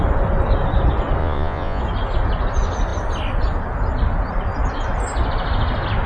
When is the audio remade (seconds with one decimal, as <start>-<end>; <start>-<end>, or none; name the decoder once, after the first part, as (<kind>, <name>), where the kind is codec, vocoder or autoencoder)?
1.2-1.8 (vocoder, Vocos)